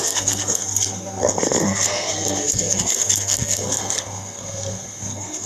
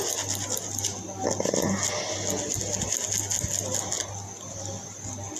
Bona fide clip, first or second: second